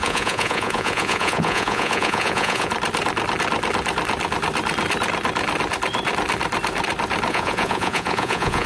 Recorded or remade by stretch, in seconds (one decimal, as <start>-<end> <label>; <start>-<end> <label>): 0.0-2.7 remade; 2.7-7.3 recorded; 7.3-8.7 remade